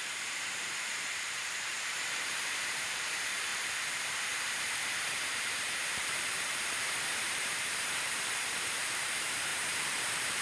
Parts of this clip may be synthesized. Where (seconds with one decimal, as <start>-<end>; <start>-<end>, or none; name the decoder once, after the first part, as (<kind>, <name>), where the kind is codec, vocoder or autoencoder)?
0.0-10.4 (vocoder, BigVGAN v2)